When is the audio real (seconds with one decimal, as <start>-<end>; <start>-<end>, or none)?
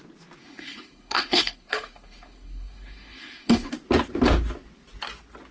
0.0-0.4; 3.7-5.5